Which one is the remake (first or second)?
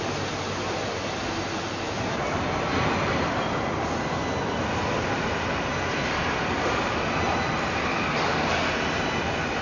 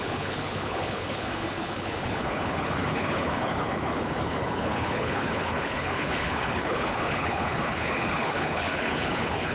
second